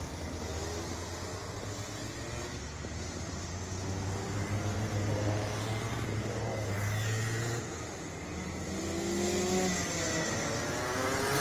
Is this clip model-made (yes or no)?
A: no